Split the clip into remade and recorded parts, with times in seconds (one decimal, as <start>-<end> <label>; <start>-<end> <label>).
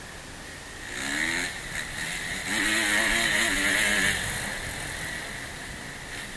0.0-6.4 recorded